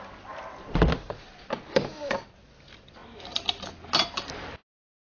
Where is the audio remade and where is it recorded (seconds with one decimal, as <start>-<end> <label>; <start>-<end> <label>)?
0.0-5.0 recorded